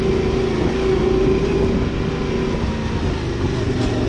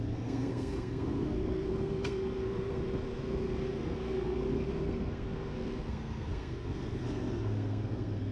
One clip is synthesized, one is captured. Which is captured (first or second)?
first